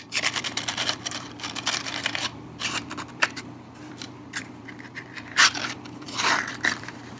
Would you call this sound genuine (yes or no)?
no